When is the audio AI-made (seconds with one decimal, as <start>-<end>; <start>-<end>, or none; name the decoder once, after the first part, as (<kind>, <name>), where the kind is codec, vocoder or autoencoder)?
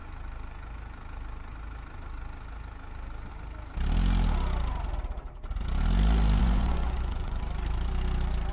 6.4-7.4 (vocoder, Vocos)